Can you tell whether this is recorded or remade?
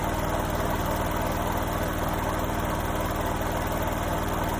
recorded